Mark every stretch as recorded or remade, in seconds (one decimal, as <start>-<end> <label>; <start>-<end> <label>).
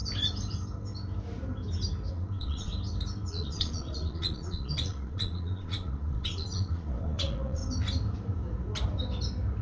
0.0-2.1 recorded; 2.1-2.7 remade; 2.7-3.3 recorded; 3.3-7.6 remade; 7.6-9.6 recorded